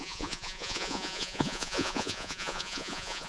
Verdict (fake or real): fake